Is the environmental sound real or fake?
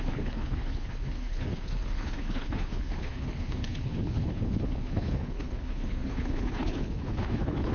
fake